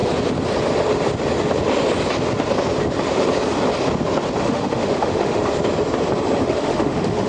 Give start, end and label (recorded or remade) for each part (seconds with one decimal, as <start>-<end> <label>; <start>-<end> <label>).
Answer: 0.0-4.4 recorded; 4.4-5.4 remade; 5.4-6.4 recorded; 6.4-7.3 remade